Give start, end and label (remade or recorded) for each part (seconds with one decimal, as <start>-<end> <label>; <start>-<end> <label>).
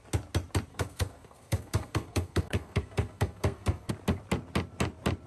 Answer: 0.0-0.7 recorded; 0.7-3.9 remade; 3.9-5.3 recorded